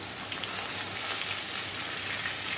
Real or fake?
real